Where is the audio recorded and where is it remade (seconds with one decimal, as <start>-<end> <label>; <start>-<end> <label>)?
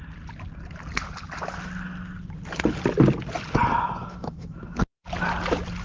0.0-4.0 recorded; 4.0-4.8 remade; 4.8-5.8 recorded